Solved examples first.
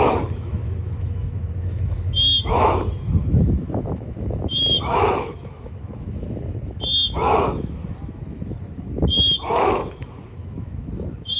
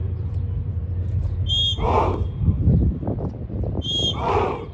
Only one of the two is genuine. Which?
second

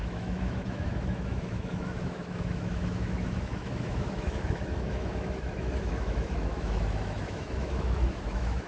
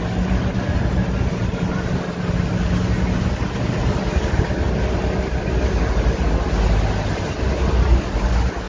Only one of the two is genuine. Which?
second